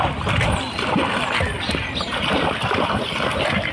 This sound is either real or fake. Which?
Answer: real